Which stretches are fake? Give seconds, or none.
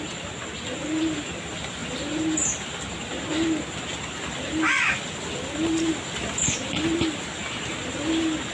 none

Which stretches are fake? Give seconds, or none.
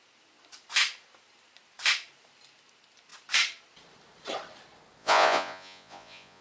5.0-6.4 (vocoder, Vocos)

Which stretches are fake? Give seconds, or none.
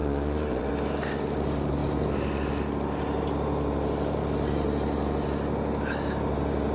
0.0-0.7 (vocoder, Vocos)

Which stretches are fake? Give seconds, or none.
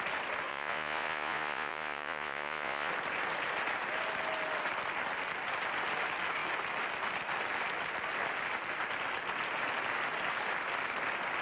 0.5-2.9 (vocoder, Vocos)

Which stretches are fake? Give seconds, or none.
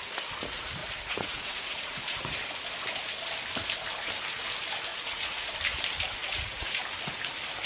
0.8-2.3 (vocoder, Vocos); 4.9-5.5; 6.2-6.8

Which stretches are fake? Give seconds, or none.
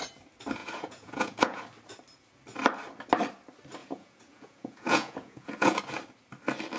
0.6-1.6 (vocoder, Vocos); 3.8-5.8